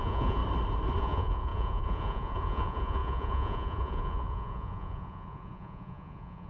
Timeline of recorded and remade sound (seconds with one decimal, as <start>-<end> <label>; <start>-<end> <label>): 0.0-0.4 remade; 0.4-1.0 recorded; 1.0-6.5 remade